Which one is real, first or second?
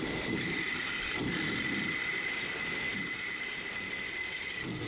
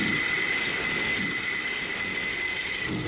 second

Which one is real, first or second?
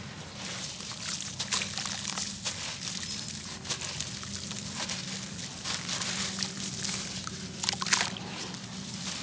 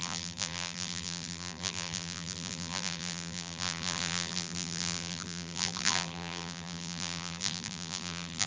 first